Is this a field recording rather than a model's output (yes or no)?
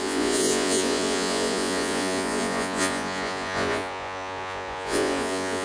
no